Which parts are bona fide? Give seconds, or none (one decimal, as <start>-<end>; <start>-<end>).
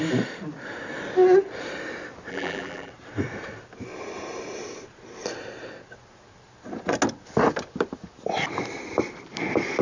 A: 0.0-2.3; 2.9-9.8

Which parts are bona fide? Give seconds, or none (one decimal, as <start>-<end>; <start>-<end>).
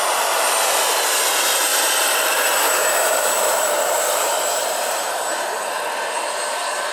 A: 0.0-1.7; 5.8-6.9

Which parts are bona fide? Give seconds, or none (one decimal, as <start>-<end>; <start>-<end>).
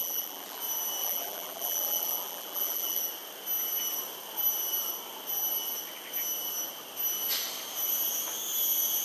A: 0.6-1.0; 3.0-9.0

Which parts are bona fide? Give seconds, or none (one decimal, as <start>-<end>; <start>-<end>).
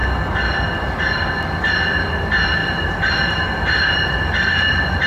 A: 0.0-2.6; 3.4-5.1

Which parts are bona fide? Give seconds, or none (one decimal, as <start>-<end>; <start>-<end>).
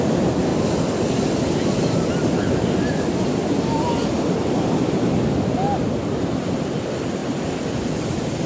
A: 0.0-7.2; 7.7-8.5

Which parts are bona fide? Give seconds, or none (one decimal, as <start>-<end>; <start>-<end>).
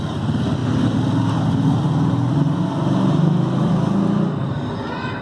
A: 0.0-5.2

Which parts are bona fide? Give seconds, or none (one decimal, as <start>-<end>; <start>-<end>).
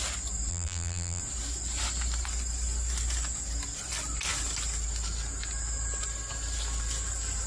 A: 0.0-0.5; 1.2-7.5